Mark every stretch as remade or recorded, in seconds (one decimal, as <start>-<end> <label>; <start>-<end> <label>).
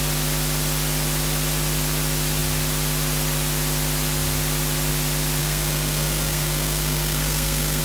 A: 0.0-5.4 recorded; 5.4-7.8 remade